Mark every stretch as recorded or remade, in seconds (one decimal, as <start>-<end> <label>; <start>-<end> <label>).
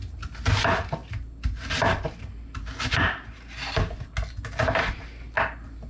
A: 0.0-5.9 recorded